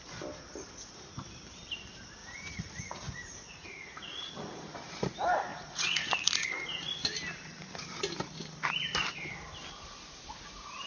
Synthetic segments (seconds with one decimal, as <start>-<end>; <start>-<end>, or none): 2.2-4.3; 5.5-6.9